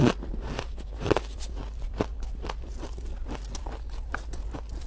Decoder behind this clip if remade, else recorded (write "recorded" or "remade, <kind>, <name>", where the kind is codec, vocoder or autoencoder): recorded